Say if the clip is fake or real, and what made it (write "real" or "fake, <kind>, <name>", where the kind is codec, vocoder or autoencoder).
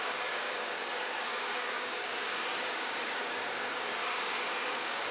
fake, codec, DAC